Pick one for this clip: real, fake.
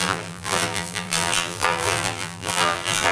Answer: fake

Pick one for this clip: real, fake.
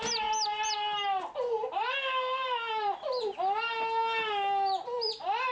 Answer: real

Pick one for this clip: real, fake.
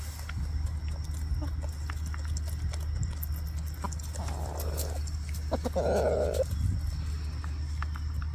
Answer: real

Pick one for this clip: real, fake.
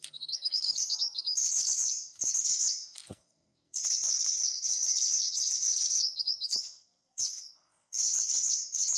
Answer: fake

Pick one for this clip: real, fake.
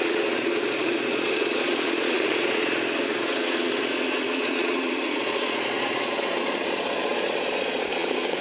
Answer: fake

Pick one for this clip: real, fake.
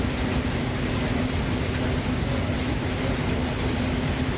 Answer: real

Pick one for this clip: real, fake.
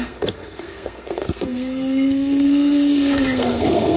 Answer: fake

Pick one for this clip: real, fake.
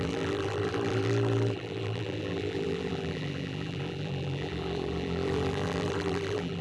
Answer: fake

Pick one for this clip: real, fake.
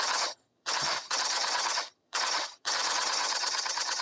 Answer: fake